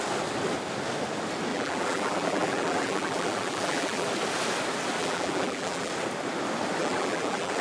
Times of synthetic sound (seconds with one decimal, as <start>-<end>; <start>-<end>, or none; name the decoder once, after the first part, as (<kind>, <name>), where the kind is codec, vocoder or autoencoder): 1.5-4.1 (vocoder, BigVGAN v2); 5.0-5.9; 6.8-7.6